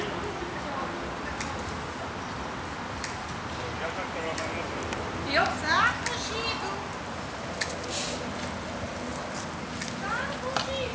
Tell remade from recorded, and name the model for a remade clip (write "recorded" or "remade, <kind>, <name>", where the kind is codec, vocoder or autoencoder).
recorded